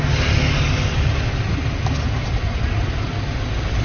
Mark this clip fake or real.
real